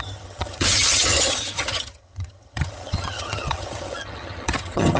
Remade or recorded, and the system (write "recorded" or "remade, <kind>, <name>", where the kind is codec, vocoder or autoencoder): remade, vocoder, HiFi-GAN